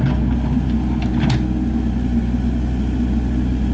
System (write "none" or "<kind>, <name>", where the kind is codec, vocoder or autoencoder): none